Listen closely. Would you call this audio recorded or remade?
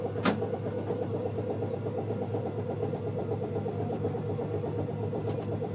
recorded